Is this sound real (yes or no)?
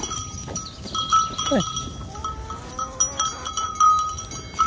yes